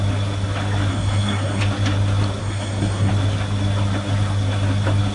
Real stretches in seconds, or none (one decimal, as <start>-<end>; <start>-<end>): 0.0-0.9; 1.6-2.4; 3.1-5.1